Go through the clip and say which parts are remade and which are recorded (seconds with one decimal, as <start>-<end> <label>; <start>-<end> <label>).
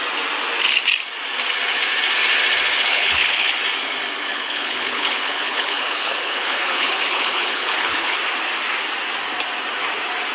0.0-2.9 recorded; 2.9-3.6 remade; 3.6-4.3 recorded; 4.3-8.2 remade; 8.2-10.3 recorded